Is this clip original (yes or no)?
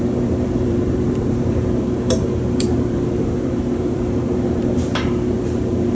no